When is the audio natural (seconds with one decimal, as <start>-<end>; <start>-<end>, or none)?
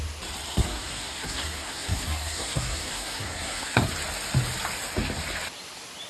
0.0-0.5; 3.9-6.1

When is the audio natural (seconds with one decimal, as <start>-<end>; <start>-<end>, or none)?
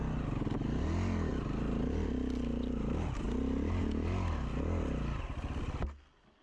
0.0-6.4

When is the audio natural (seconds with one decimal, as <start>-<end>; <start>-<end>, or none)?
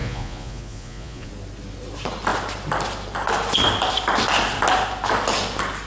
1.3-5.9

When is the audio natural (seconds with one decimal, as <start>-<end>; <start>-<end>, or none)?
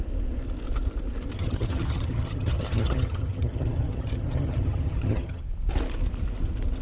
0.0-1.3; 5.4-6.8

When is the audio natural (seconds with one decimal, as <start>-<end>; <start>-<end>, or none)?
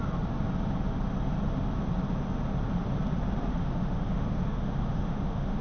0.0-3.5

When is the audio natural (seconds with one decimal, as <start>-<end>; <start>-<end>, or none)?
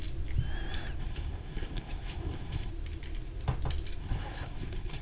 0.0-1.0; 2.7-4.0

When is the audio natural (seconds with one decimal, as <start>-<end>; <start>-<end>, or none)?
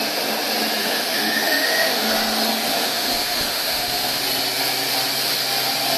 0.0-0.8; 2.1-2.7; 4.2-6.0